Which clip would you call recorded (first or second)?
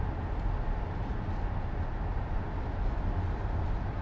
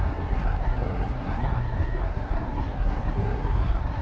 first